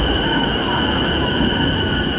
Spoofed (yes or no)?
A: yes